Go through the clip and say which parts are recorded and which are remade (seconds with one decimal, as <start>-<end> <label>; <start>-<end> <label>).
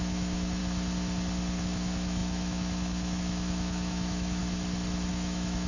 0.0-0.6 remade; 0.6-1.6 recorded; 1.6-4.4 remade; 4.4-5.1 recorded; 5.1-5.7 remade